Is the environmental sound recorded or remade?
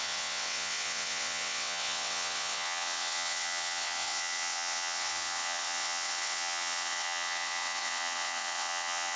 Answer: remade